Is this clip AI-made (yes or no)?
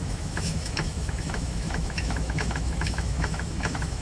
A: yes